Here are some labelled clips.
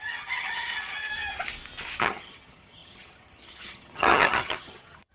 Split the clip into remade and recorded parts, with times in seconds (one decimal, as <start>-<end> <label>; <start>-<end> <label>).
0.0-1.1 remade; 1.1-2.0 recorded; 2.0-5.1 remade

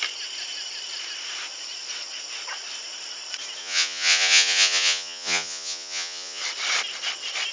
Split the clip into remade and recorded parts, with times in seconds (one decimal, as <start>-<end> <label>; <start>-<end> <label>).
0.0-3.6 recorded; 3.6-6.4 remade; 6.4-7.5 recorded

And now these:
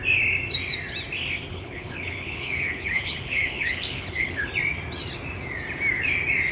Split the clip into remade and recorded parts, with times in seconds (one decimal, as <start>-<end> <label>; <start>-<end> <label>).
0.0-1.5 recorded; 1.5-4.5 remade; 4.5-6.5 recorded

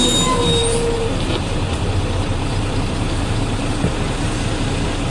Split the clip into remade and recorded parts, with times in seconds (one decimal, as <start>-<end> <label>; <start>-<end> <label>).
0.0-0.6 recorded; 0.6-3.7 remade; 3.7-5.1 recorded

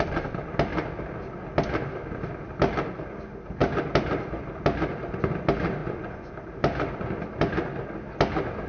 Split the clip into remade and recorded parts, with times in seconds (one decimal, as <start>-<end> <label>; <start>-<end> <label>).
0.0-5.8 recorded; 5.8-6.3 remade; 6.3-8.7 recorded

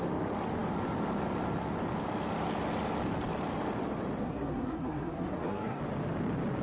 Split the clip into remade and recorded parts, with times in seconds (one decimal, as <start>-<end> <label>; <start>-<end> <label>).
0.0-4.2 recorded; 4.2-5.8 remade; 5.8-6.6 recorded

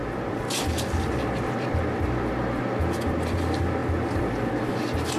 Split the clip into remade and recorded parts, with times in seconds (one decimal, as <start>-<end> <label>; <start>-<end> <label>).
0.0-2.3 remade; 2.3-5.2 recorded